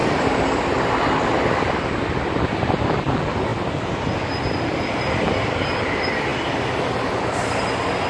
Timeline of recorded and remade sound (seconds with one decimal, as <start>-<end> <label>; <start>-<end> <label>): 0.0-8.1 recorded